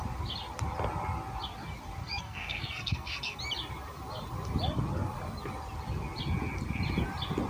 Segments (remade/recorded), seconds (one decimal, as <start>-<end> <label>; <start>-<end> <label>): 0.0-2.0 recorded; 2.0-3.4 remade; 3.4-7.5 recorded